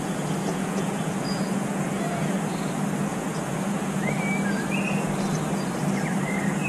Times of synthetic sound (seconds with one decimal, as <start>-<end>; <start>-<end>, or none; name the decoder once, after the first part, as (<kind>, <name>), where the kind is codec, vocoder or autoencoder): 0.4-2.7 (vocoder, Vocos); 3.1-4.1